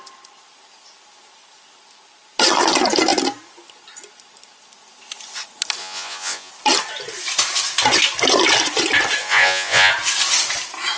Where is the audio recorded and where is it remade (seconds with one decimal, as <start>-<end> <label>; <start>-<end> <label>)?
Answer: 0.0-5.8 recorded; 5.8-6.5 remade; 6.5-9.2 recorded; 9.2-9.9 remade; 9.9-11.0 recorded